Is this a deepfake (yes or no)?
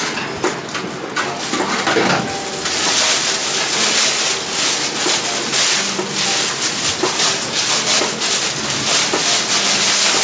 no